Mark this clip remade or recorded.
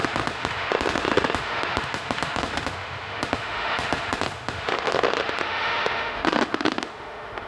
remade